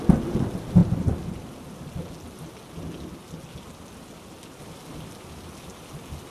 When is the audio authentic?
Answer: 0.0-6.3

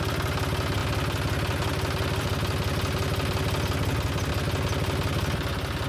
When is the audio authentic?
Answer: 0.0-5.9

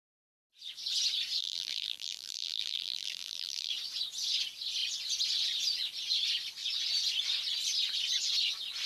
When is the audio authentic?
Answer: 0.0-1.4; 3.7-8.9

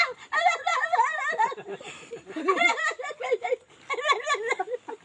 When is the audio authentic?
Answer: 0.0-0.7; 3.7-5.0

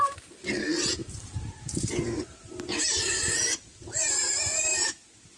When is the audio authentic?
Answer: none

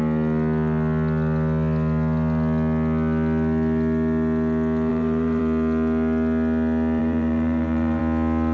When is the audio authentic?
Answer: 0.0-4.9; 5.4-7.0; 8.0-8.5

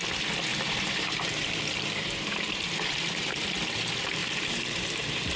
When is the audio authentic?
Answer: 0.0-0.5; 3.5-4.2

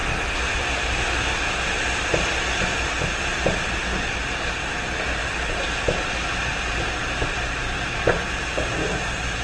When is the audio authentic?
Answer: 1.0-9.4